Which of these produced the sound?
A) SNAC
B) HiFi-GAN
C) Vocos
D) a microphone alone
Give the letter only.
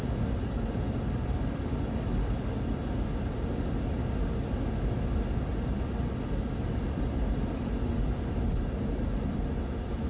D